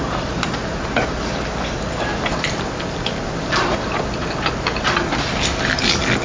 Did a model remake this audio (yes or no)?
no